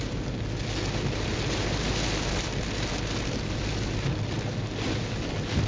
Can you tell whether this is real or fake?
real